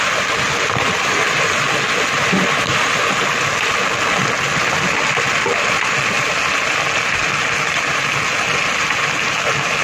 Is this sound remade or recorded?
recorded